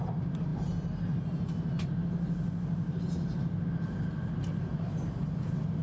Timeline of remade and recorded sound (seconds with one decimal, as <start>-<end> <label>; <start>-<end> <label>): 0.0-4.7 recorded; 4.7-5.8 remade